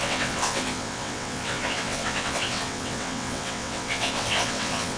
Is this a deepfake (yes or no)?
yes